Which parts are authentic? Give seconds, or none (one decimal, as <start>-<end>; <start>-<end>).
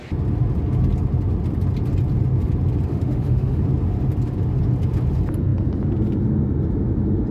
0.0-2.9; 3.6-7.3